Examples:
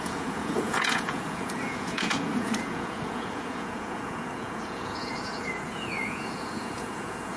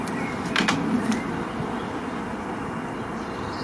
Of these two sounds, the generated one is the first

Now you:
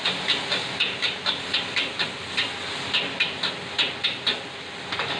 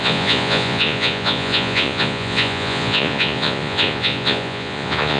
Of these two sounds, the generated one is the second